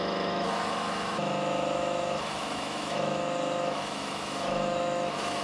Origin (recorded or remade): remade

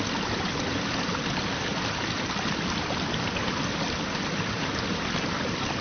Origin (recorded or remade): recorded